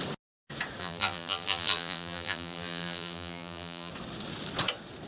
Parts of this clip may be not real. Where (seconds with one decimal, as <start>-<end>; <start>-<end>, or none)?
0.8-3.9